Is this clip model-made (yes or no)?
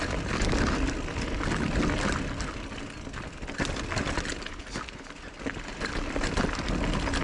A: no